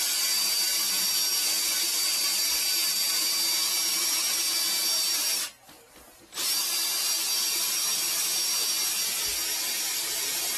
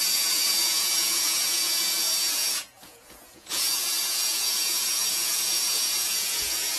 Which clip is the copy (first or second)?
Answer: second